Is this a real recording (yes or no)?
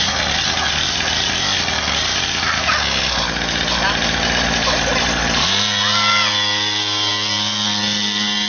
yes